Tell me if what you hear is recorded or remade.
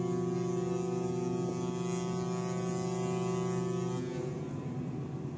recorded